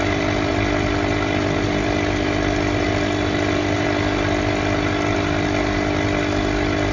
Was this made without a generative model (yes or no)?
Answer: yes